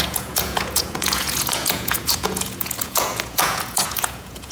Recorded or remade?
remade